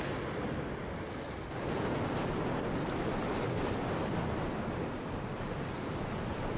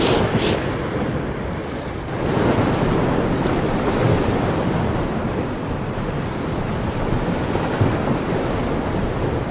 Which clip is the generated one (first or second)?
second